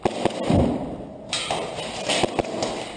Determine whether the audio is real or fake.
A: real